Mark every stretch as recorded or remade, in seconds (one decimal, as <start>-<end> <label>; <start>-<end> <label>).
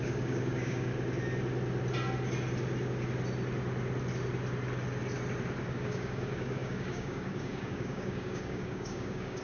0.0-0.9 remade; 0.9-5.7 recorded; 5.7-9.4 remade